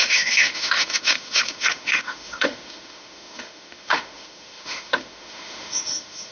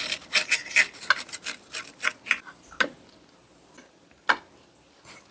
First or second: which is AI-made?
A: first